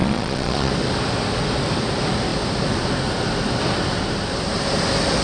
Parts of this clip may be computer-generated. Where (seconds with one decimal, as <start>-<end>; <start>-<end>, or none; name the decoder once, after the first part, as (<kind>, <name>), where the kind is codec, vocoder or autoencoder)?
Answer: 0.0-0.7 (vocoder, Vocos)